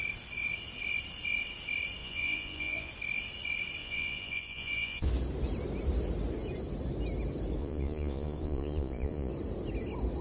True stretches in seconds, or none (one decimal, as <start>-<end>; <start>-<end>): 0.0-2.0; 2.9-3.8; 5.1-7.6; 9.3-10.2